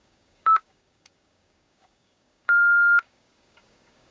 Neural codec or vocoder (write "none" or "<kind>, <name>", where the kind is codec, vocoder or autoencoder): codec, DAC